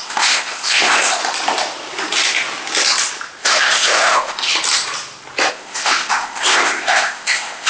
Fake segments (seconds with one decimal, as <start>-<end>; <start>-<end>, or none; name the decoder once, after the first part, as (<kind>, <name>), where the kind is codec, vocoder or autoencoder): 0.0-1.2 (codec, ZipCodec); 3.4-4.5; 5.5-7.7